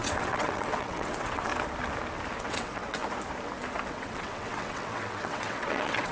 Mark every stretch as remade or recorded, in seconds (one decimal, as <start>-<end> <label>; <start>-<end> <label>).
0.0-1.5 remade; 1.5-2.4 recorded; 2.4-3.0 remade; 3.0-3.9 recorded; 3.9-6.1 remade

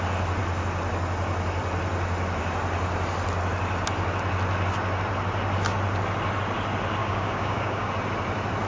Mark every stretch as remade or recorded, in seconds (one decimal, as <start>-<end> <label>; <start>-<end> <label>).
0.0-7.0 recorded; 7.0-7.9 remade; 7.9-8.7 recorded

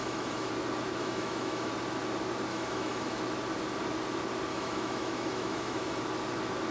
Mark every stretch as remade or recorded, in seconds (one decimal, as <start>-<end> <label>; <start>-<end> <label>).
0.0-0.5 remade; 0.5-1.0 recorded; 1.0-1.7 remade; 1.7-2.5 recorded; 2.5-3.2 remade; 3.2-4.5 recorded; 4.5-6.0 remade; 6.0-6.7 recorded